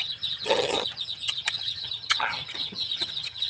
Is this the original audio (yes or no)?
no